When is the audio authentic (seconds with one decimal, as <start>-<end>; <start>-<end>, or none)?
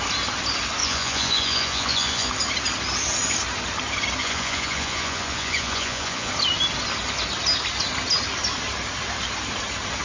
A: 0.0-0.8; 2.3-4.2; 6.3-10.0